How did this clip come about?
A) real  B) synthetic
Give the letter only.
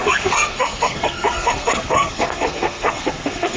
B